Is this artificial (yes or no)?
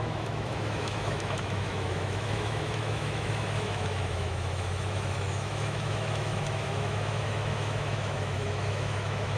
yes